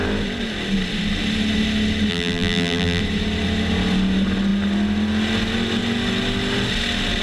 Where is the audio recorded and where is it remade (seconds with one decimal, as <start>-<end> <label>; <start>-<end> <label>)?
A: 0.0-2.1 recorded; 2.1-3.0 remade; 3.0-7.2 recorded